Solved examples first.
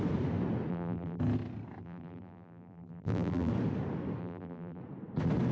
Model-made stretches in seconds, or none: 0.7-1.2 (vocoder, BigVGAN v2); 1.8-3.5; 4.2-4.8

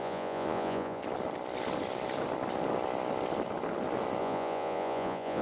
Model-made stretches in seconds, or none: 0.0-1.0 (vocoder, Vocos); 4.2-5.4

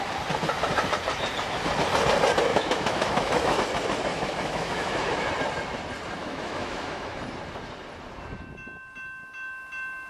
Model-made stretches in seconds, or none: 2.5-3.6 (autoencoder, DAC-VAE); 4.1-5.3; 6.2-7.2